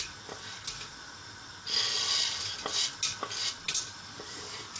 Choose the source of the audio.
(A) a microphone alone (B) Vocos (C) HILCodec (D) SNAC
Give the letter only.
A